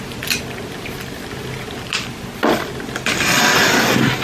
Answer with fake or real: real